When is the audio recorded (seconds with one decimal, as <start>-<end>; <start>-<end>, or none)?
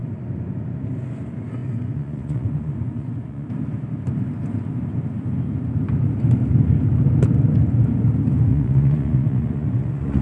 0.0-1.6; 3.5-8.5